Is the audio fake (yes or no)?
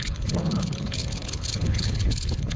yes